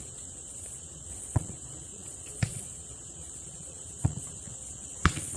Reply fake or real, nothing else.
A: fake